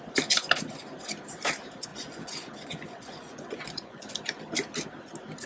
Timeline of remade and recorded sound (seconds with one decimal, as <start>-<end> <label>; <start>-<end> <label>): 0.0-1.9 recorded; 1.9-4.1 remade; 4.1-5.5 recorded